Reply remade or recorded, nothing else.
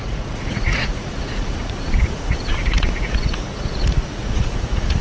remade